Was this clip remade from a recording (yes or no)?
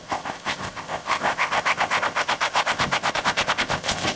yes